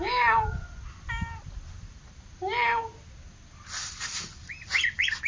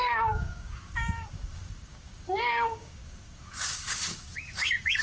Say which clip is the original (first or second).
first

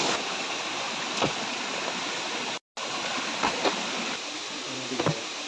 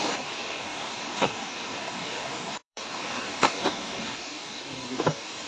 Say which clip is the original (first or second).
first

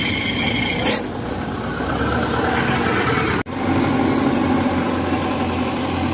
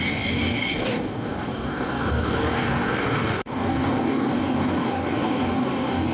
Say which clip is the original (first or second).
first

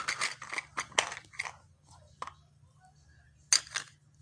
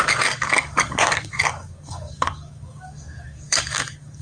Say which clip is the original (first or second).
first